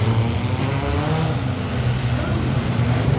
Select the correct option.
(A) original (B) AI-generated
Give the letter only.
A